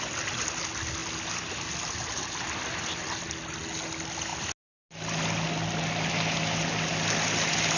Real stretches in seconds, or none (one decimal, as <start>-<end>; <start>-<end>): 0.0-7.8